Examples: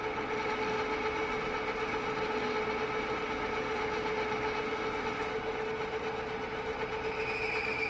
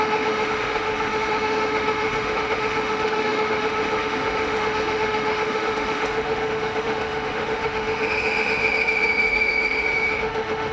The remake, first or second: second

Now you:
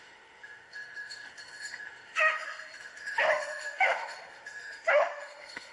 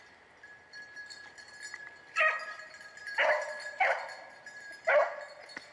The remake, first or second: first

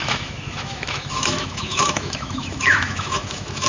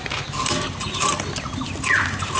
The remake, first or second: first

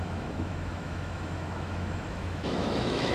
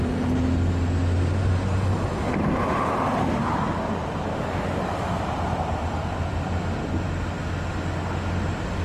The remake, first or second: first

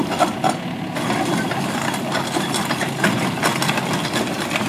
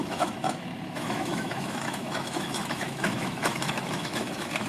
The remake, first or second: second